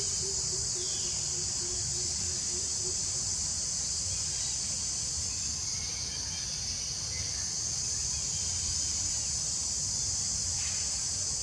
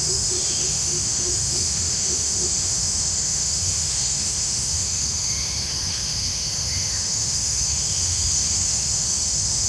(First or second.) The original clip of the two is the first